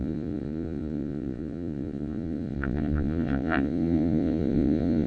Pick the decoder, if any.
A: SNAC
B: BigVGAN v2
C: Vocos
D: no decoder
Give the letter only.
C